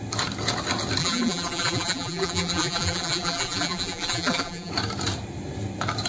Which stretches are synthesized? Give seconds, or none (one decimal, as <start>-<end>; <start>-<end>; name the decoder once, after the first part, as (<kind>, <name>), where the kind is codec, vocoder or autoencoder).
1.0-4.7 (vocoder, BigVGAN v2)